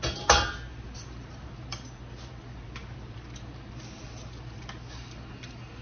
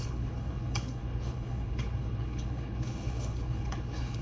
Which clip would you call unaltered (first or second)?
first